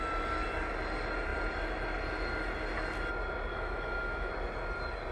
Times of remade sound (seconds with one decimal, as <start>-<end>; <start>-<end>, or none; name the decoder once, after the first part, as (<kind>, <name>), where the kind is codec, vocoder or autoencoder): 3.5-4.3 (autoencoder, DAC-VAE)

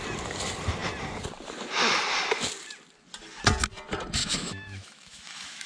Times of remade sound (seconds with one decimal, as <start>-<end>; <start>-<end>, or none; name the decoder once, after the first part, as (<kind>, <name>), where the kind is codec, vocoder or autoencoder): 4.2-5.7 (autoencoder, DAC-VAE)

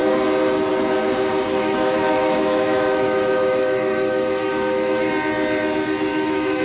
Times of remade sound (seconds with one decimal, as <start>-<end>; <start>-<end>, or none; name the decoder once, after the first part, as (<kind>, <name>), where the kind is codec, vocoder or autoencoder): 1.5-5.1 (autoencoder, DAC-VAE); 6.1-6.6

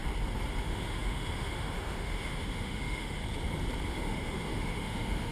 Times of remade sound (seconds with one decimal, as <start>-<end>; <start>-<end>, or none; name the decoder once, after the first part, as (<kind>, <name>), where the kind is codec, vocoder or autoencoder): 0.6-3.2 (autoencoder, DAC-VAE); 3.9-5.3

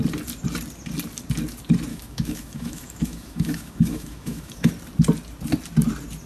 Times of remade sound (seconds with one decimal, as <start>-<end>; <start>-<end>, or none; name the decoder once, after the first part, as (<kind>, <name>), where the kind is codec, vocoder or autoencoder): 1.9-4.7 (autoencoder, DAC-VAE)

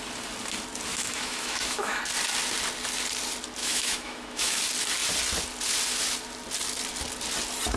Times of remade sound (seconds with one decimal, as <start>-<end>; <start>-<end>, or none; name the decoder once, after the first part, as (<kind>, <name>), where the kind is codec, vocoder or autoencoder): 0.9-2.0 (autoencoder, DAC-VAE); 3.6-4.6

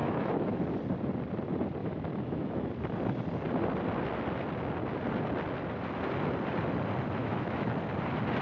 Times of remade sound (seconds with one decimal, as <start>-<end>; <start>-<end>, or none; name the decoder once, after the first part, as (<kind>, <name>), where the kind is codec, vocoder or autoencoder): 0.0-0.6 (autoencoder, DAC-VAE); 1.8-2.7; 7.2-7.7